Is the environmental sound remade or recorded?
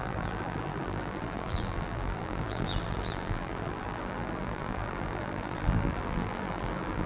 remade